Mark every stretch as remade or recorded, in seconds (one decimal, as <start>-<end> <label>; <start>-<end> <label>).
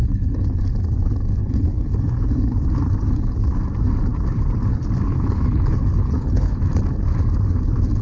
0.0-0.6 remade; 0.6-1.4 recorded; 1.4-2.3 remade; 2.3-5.1 recorded; 5.1-6.6 remade; 6.6-8.0 recorded